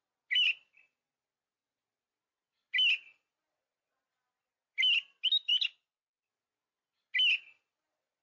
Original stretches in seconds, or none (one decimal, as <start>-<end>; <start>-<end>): 0.0-8.2